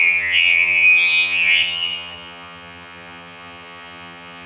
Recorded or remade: remade